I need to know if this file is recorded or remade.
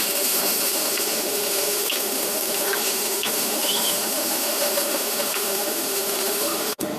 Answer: remade